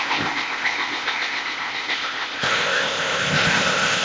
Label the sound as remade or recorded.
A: remade